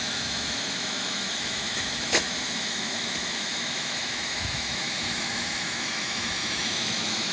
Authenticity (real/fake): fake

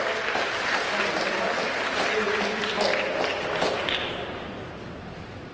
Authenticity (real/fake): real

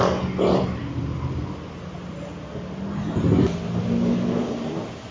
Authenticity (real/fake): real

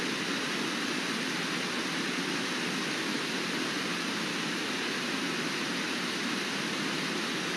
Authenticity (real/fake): real